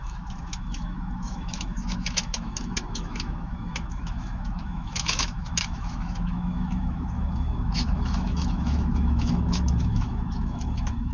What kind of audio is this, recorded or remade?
remade